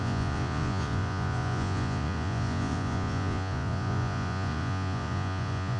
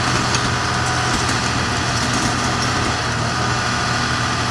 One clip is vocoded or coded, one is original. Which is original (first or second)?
second